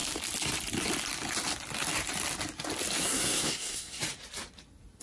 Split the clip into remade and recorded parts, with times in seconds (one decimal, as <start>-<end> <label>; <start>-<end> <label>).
0.0-3.0 recorded; 3.0-4.0 remade; 4.0-5.0 recorded